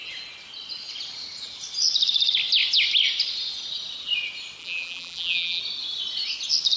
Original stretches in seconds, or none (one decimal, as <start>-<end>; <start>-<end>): 0.0-4.6; 5.6-6.8